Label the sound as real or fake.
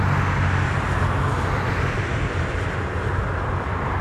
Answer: real